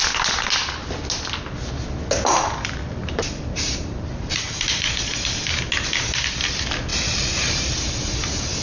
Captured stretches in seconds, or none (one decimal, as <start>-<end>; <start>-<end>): 0.0-2.3; 5.6-6.9; 7.9-8.6